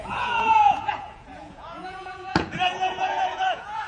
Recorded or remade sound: remade